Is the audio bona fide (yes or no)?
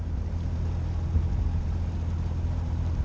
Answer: yes